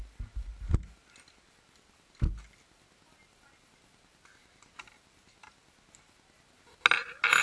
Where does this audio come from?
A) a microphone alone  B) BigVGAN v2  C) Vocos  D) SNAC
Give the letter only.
A